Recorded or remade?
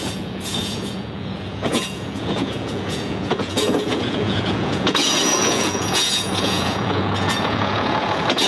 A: remade